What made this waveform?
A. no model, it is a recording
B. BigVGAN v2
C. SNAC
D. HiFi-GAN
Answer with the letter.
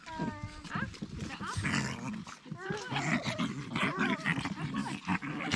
A